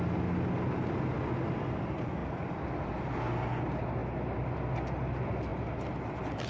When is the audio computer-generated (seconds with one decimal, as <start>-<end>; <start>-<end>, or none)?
none